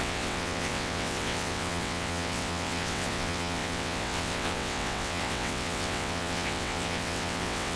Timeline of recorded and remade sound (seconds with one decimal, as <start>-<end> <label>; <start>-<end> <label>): 0.0-7.8 remade